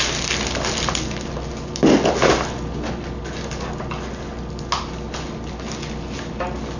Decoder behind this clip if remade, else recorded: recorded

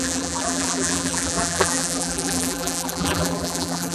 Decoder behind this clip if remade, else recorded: remade, vocoder, BigVGAN v2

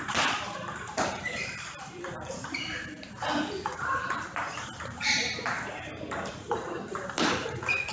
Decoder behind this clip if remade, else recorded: remade, vocoder, BigVGAN v2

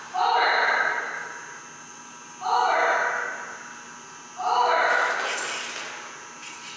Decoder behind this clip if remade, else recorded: recorded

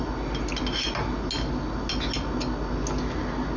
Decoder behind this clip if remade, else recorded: recorded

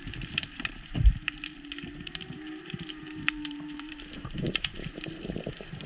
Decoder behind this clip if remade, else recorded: remade, vocoder, BigVGAN v2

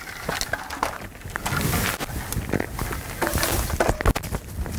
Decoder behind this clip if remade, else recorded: recorded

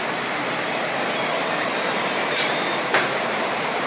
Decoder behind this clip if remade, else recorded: remade, vocoder, BigVGAN v2